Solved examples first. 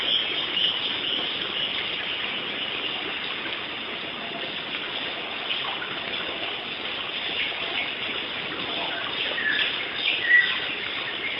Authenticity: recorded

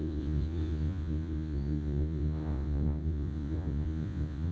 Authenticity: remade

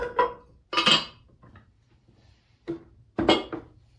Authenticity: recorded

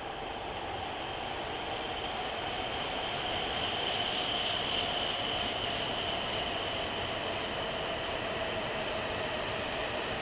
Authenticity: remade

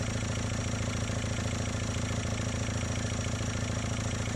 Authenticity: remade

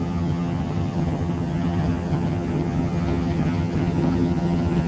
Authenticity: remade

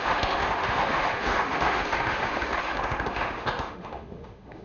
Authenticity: remade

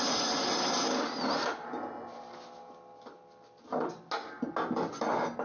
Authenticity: recorded